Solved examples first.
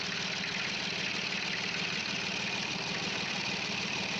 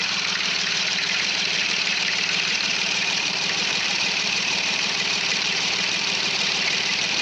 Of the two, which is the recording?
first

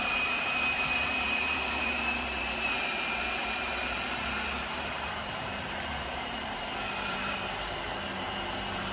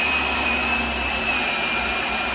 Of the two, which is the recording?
second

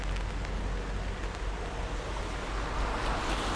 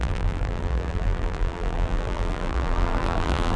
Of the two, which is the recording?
first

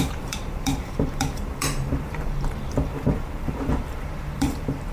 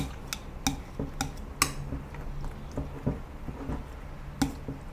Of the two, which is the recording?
second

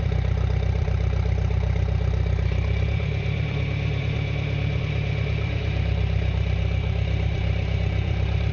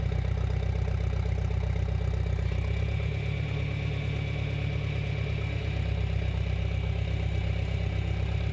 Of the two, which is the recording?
second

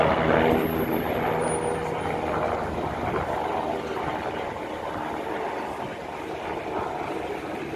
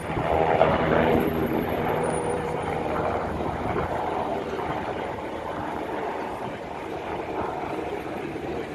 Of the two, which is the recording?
first